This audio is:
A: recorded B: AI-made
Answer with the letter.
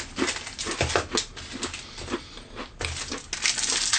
A